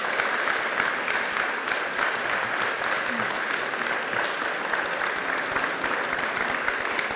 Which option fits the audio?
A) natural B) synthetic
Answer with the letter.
A